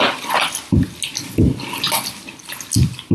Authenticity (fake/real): real